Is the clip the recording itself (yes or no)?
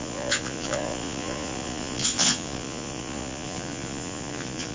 no